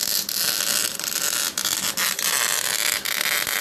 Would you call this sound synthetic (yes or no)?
no